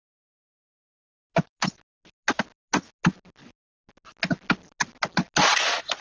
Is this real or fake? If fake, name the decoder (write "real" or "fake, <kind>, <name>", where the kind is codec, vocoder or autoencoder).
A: real